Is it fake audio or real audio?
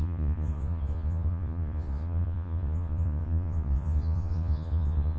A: fake